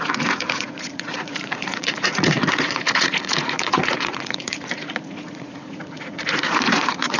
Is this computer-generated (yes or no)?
yes